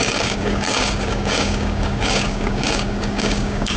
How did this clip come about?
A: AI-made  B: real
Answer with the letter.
A